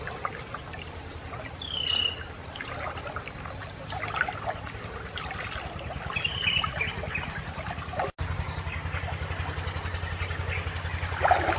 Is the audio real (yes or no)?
yes